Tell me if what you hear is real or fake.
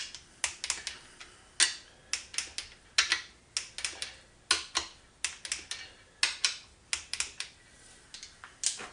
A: real